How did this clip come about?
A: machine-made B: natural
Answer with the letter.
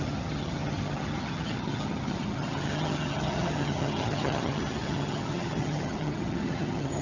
A